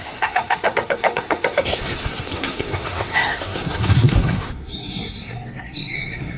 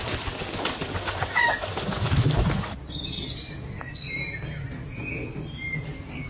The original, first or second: second